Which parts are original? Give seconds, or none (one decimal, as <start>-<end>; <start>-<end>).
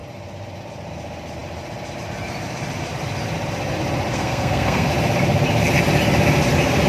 0.0-4.1; 4.9-6.9